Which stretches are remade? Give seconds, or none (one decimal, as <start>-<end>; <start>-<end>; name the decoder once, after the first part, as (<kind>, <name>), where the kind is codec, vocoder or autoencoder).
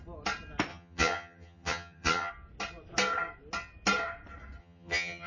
0.7-2.3 (vocoder, HiFi-GAN); 4.6-5.3